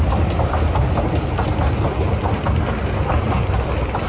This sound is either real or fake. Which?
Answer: real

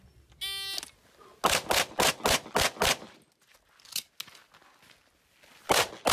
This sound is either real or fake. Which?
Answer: real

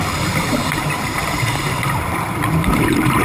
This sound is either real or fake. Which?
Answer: real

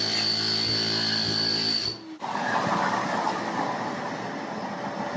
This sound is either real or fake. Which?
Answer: real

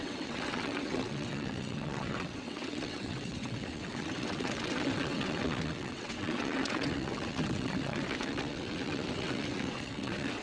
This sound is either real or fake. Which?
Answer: fake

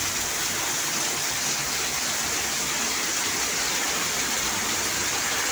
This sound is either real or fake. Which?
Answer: real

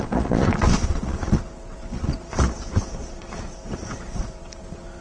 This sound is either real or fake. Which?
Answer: fake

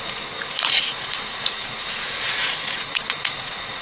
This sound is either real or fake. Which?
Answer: fake